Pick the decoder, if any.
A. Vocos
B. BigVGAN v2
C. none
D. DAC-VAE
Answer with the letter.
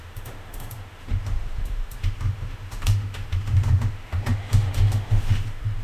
D